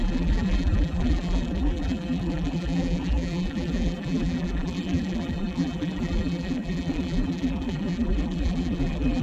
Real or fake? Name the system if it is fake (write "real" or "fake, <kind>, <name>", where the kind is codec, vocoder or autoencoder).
fake, vocoder, BigVGAN v2